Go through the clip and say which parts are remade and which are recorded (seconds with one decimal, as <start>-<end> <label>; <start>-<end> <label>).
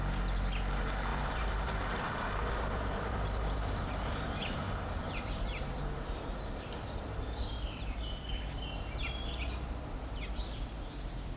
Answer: 0.0-1.1 recorded; 1.1-6.2 remade; 6.2-7.4 recorded; 7.4-9.0 remade; 9.0-11.4 recorded